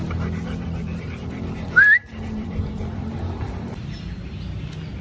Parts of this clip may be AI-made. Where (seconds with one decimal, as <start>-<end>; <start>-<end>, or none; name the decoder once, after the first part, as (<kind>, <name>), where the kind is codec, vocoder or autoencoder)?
0.0-4.2 (vocoder, BigVGAN v2)